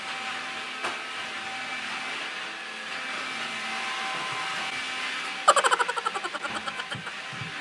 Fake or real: real